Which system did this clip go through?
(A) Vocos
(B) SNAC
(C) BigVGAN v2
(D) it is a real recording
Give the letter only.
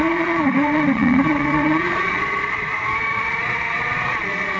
A